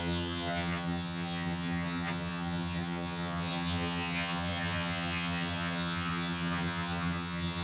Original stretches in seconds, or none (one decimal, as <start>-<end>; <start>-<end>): none